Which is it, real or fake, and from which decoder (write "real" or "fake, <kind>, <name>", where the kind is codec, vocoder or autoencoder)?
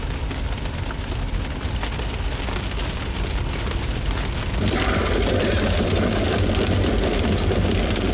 real